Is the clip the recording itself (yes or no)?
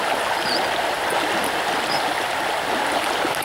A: yes